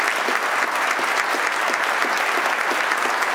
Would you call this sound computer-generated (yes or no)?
no